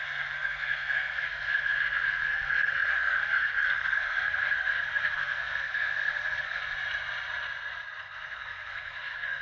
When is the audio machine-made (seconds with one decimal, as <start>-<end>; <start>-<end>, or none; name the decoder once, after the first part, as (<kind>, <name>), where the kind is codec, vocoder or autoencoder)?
0.0-6.6 (codec, SNAC); 8.0-9.4